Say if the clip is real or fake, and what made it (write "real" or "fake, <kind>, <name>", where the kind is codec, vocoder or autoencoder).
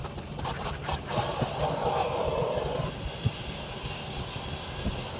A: real